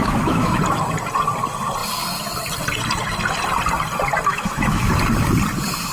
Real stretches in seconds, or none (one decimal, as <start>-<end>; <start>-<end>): 0.6-4.3; 4.9-5.9